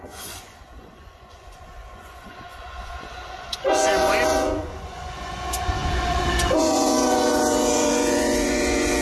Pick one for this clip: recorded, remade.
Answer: remade